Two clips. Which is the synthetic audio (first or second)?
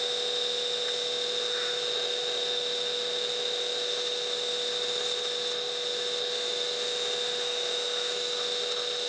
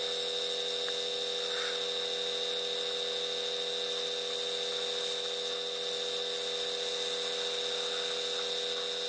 first